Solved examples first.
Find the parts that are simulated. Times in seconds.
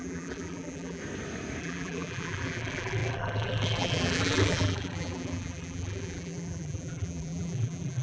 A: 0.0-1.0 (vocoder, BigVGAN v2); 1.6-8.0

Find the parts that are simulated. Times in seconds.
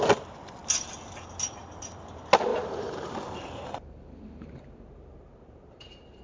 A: 2.5-6.2 (vocoder, BigVGAN v2)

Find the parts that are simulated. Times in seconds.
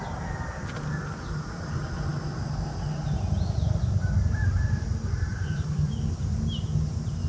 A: 5.3-6.1 (vocoder, BigVGAN v2)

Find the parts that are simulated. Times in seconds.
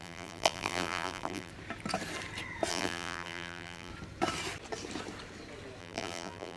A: 0.0-1.5 (vocoder, BigVGAN v2); 2.7-3.9; 5.8-6.6